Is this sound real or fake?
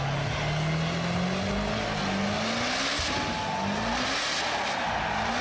real